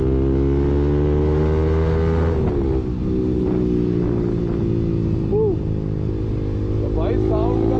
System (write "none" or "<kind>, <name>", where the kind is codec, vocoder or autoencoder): none